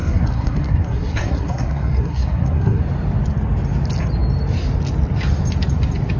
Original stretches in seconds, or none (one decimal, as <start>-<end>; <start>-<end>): 2.8-6.2